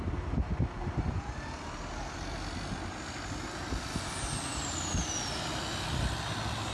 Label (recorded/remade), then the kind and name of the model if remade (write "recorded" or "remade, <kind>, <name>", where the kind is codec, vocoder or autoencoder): recorded